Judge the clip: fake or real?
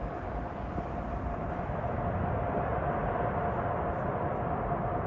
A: real